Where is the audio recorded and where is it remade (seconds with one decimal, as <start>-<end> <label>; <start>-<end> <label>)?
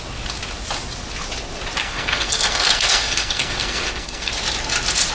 0.0-1.8 recorded; 1.8-4.3 remade; 4.3-5.1 recorded